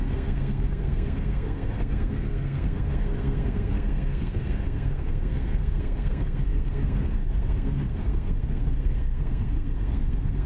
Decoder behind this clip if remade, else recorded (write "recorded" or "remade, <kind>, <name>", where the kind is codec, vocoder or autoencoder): remade, codec, SNAC